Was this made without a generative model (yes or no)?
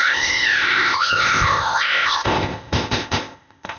no